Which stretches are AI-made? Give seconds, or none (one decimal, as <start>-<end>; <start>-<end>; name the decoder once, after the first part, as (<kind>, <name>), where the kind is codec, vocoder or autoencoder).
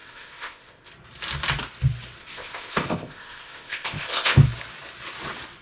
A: 0.0-0.9 (codec, ZipCodec); 2.2-4.4